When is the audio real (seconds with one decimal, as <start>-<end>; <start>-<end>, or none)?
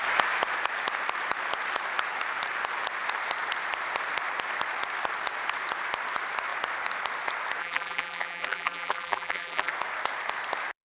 0.0-7.6; 9.7-10.9